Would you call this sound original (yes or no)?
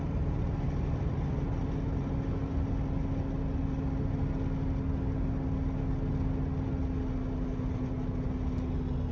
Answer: yes